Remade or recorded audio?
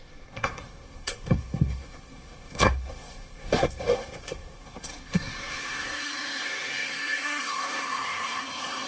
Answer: remade